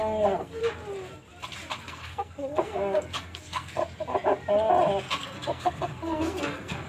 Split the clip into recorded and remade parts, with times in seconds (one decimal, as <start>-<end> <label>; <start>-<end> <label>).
0.0-0.6 remade; 0.6-1.8 recorded; 1.8-3.8 remade; 3.8-5.1 recorded; 5.1-6.9 remade